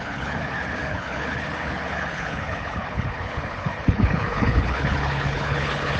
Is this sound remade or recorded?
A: remade